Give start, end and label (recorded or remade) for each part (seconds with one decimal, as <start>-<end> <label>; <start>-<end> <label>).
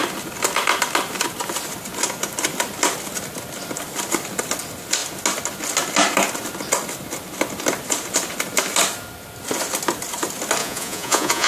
0.0-10.6 recorded; 10.6-11.5 remade